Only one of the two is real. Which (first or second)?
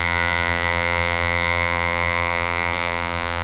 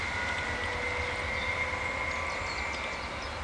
second